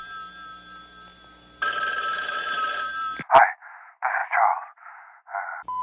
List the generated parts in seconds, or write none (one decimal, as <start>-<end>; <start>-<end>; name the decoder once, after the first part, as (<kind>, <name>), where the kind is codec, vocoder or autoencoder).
0.5-3.3 (vocoder, BigVGAN v2)